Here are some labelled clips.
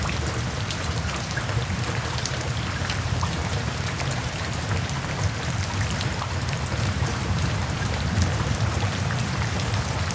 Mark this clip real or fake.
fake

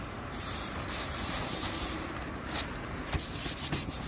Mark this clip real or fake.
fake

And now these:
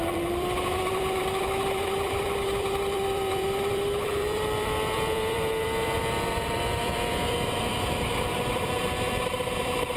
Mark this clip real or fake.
fake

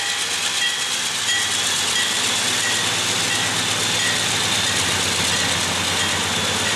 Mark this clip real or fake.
real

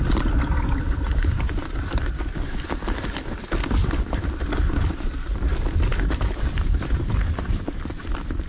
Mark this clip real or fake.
fake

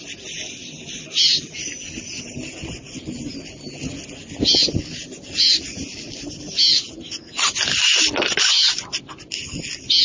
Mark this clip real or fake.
real